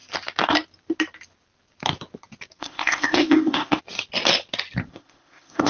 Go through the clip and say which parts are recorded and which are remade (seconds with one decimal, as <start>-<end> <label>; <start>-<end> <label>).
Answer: 0.0-2.6 recorded; 2.6-3.8 remade; 3.8-4.9 recorded; 4.9-5.7 remade